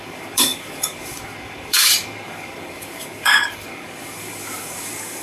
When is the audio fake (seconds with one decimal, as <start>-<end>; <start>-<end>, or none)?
0.0-5.2